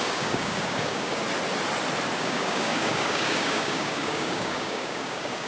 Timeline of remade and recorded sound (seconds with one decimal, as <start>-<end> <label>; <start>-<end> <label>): 0.0-1.2 remade; 1.2-2.2 recorded; 2.2-5.5 remade